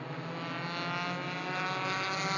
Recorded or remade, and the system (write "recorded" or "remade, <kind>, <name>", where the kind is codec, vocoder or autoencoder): recorded